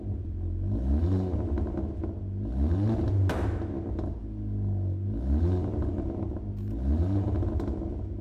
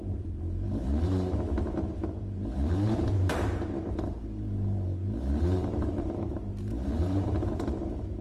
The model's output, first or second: second